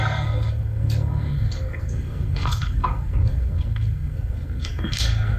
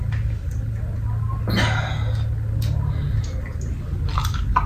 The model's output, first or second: first